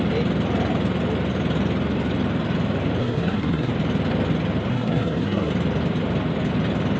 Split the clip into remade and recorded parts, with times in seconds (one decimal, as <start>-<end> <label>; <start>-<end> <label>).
0.0-3.0 recorded; 3.0-3.7 remade; 3.7-4.7 recorded; 4.7-5.5 remade; 5.5-7.0 recorded